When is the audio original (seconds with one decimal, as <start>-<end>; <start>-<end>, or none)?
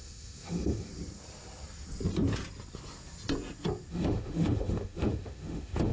0.9-3.9